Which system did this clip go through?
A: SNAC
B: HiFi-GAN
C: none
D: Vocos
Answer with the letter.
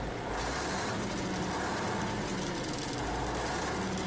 C